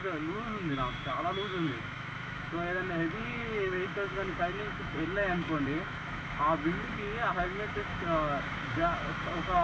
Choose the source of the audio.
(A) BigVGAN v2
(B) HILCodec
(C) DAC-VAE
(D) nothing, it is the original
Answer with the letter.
C